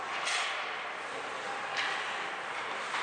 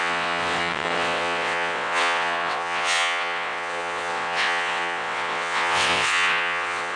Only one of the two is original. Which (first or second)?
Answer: first